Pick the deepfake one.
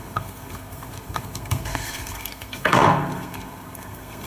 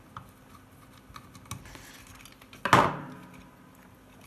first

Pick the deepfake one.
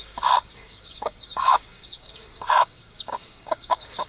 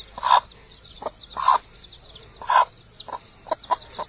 first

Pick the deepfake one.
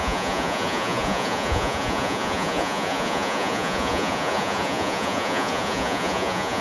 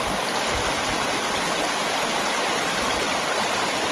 first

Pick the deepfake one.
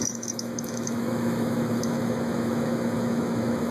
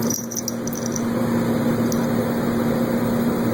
first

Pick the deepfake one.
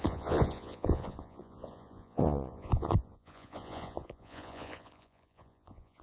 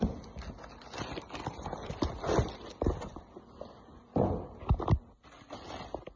first